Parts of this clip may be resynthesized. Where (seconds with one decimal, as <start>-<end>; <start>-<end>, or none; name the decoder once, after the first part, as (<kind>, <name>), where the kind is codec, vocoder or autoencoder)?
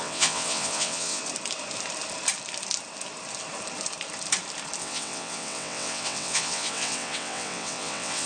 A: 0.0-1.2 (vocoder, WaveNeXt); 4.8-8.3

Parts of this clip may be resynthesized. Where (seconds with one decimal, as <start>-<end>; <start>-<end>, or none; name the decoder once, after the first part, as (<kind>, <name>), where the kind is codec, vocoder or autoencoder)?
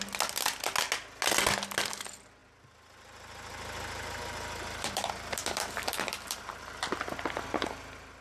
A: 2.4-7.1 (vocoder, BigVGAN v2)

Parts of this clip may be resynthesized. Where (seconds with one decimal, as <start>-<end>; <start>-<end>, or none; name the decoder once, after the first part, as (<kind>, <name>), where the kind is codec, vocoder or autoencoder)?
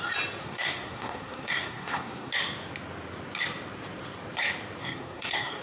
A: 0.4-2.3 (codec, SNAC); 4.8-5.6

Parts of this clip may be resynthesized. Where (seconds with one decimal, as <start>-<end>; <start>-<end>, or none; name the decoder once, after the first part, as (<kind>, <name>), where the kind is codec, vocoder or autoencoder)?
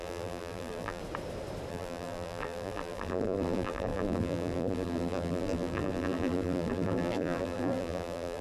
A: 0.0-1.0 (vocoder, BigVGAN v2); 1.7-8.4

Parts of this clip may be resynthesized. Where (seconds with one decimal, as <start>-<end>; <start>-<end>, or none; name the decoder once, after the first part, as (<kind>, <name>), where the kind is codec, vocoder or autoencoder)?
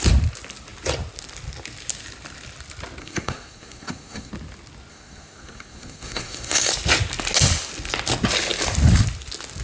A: 3.0-4.3 (codec, SNAC); 4.9-6.7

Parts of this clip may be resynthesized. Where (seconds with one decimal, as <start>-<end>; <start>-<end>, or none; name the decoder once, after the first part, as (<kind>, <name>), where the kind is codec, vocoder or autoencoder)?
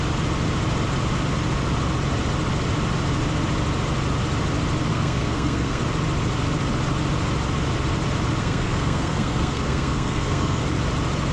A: 4.9-5.8 (codec, SNAC); 8.4-10.6